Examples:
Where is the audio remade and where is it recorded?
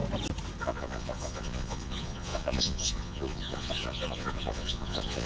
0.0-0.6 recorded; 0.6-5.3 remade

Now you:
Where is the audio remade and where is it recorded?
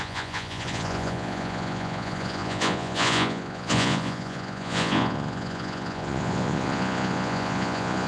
0.0-8.1 remade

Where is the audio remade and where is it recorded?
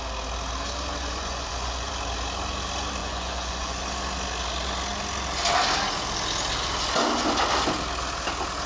0.0-1.0 recorded; 1.0-1.9 remade; 1.9-3.0 recorded; 3.0-3.8 remade; 3.8-8.7 recorded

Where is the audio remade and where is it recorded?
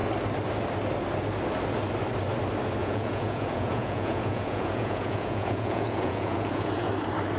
0.0-2.8 recorded; 2.8-6.9 remade; 6.9-7.4 recorded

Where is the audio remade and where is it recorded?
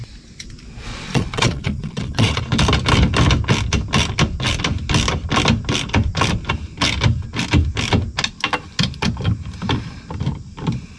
0.0-0.9 recorded; 0.9-2.4 remade; 2.4-11.0 recorded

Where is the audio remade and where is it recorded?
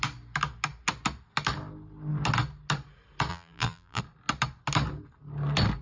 0.0-3.3 recorded; 3.3-4.0 remade; 4.0-5.8 recorded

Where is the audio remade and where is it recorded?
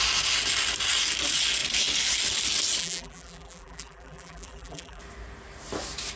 0.0-2.8 recorded; 2.8-5.0 remade; 5.0-6.2 recorded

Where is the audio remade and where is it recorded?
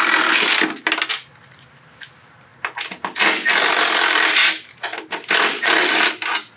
0.0-6.6 recorded